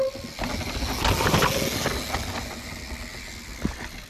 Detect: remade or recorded recorded